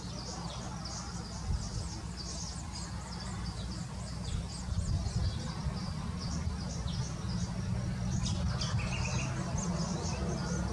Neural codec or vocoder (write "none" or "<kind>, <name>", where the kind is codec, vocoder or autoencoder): none